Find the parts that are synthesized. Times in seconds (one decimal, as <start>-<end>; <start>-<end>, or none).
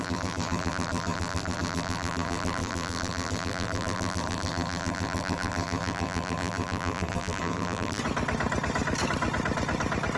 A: 0.0-8.0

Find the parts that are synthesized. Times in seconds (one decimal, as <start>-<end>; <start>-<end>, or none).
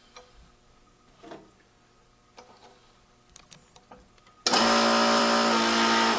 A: none